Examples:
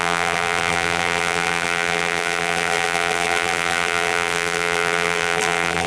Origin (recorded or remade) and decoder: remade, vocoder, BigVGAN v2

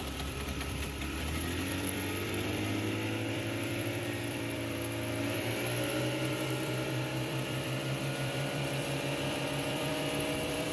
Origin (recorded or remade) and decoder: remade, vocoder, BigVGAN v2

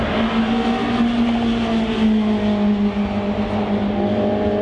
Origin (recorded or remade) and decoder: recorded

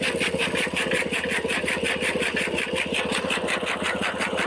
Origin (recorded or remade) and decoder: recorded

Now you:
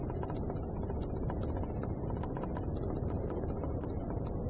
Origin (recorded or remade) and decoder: recorded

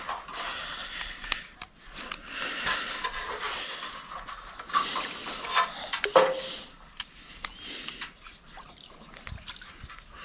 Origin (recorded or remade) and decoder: recorded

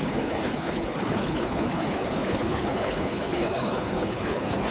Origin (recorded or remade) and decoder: remade, codec, HILCodec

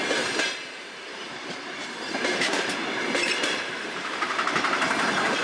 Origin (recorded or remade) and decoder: remade, vocoder, BigVGAN v2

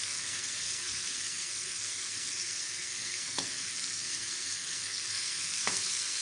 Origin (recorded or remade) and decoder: remade, codec, SNAC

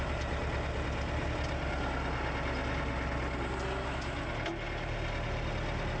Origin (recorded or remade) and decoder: recorded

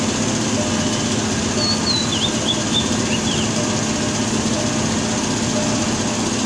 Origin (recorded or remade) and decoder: recorded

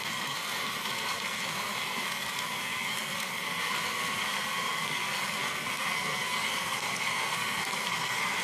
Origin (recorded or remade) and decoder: remade, codec, SNAC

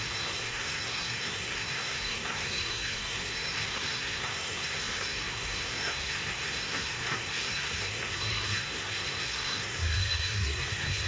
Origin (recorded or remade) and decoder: remade, codec, SNAC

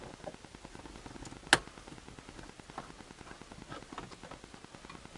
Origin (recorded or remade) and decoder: recorded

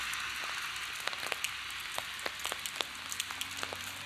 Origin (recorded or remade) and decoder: recorded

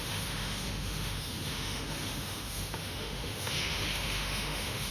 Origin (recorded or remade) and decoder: remade, autoencoder, DAC-VAE